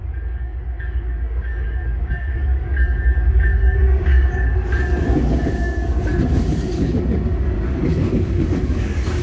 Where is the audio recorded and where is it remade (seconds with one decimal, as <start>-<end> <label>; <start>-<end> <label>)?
0.0-9.2 remade